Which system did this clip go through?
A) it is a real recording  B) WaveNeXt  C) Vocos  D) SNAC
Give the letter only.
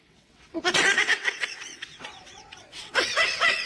B